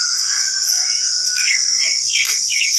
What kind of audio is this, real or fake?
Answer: fake